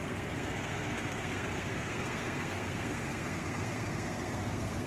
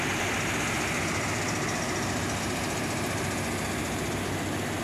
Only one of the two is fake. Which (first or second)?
first